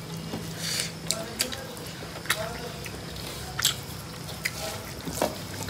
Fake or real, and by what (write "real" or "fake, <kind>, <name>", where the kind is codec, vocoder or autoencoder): real